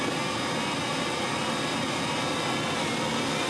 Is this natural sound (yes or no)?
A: yes